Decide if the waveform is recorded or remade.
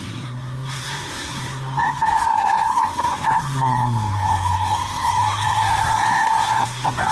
remade